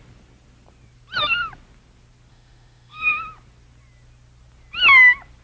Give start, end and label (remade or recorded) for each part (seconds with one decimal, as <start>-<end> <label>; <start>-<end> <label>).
0.0-2.3 recorded; 2.3-3.2 remade; 3.2-5.4 recorded